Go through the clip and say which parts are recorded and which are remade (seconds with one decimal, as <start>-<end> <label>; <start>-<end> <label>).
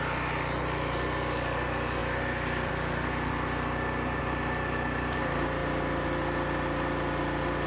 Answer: 0.0-7.7 recorded